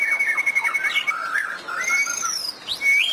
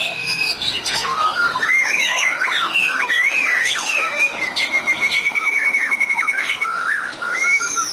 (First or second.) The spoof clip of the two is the second